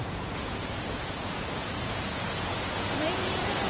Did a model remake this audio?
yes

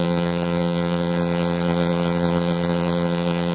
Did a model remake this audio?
yes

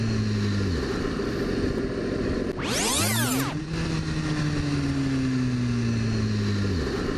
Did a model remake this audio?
no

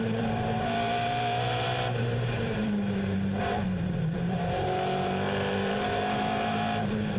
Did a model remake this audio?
yes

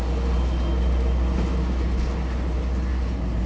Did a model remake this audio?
no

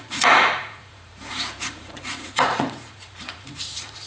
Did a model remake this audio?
yes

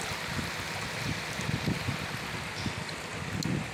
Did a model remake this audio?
no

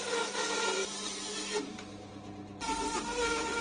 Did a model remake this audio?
no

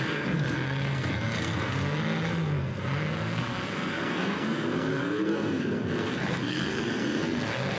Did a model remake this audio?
yes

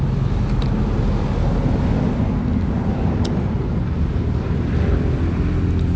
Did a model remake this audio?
no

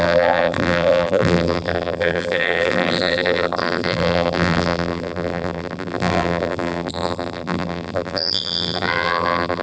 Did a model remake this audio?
yes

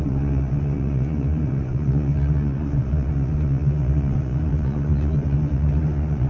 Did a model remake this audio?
yes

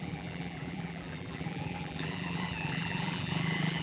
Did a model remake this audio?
yes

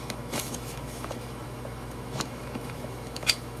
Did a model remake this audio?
yes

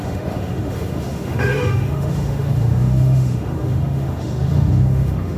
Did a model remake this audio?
yes